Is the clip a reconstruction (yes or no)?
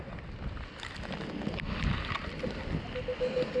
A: no